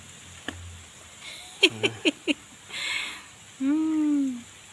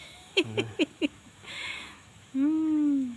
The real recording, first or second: first